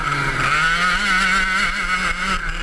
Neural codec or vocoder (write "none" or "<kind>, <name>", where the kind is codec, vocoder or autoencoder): none